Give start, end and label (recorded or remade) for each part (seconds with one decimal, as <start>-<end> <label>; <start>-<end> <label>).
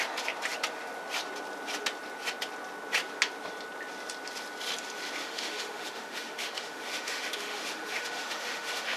0.0-5.2 recorded; 5.2-9.0 remade